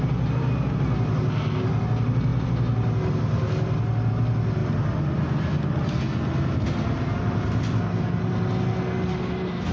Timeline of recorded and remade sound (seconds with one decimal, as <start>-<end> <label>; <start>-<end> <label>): 0.0-9.7 recorded